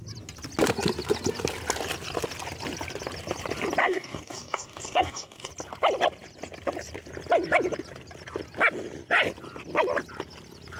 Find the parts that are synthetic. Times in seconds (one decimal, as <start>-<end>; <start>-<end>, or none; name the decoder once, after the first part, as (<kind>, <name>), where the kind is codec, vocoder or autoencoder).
3.8-5.5 (codec, DAC)